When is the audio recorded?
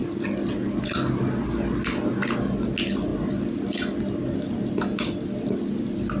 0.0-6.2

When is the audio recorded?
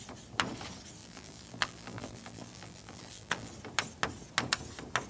0.0-1.0; 3.5-5.1